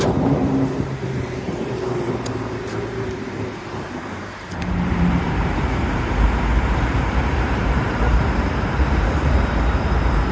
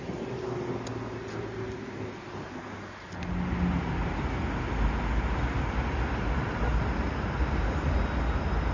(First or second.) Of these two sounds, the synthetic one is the first